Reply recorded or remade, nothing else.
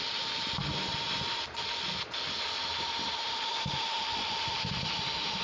recorded